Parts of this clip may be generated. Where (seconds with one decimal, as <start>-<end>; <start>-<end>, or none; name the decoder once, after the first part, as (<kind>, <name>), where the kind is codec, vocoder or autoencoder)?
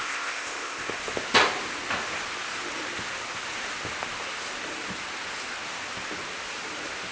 0.0-1.0 (codec, ZipCodec)